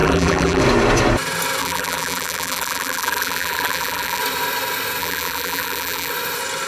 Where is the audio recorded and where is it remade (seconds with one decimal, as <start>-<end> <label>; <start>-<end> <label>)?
0.0-0.6 remade; 0.6-1.6 recorded; 1.6-4.2 remade; 4.2-5.0 recorded; 5.0-6.1 remade; 6.1-6.7 recorded